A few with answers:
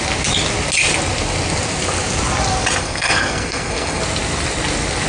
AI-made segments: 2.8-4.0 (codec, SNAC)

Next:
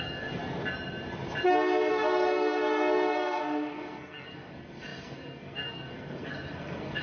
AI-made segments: 0.0-0.4 (codec, SNAC); 1.9-7.0

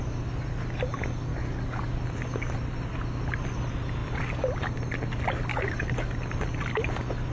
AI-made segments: 1.3-2.0 (codec, DAC); 5.5-6.1